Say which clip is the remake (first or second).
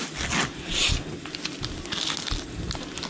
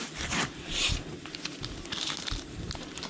second